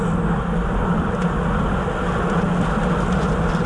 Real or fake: real